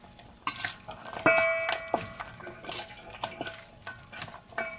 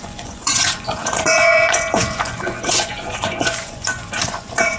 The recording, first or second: first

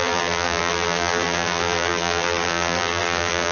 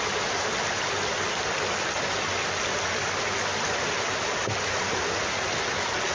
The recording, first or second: second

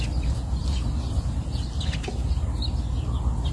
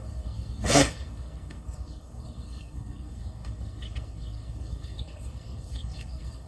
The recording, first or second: first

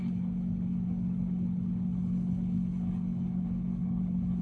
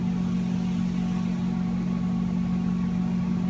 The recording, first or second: second